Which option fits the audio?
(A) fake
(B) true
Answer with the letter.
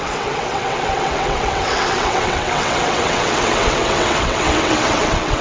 A